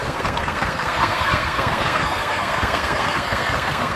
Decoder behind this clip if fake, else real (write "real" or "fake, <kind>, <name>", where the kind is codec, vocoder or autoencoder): fake, codec, SNAC